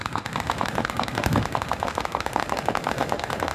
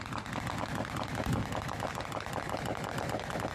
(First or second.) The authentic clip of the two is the second